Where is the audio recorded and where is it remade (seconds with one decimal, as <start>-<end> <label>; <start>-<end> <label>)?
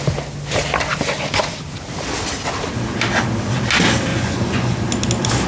0.0-4.1 recorded; 4.1-4.8 remade; 4.8-5.5 recorded